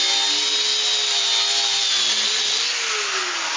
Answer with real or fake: real